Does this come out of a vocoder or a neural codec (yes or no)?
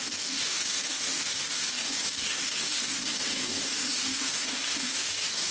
yes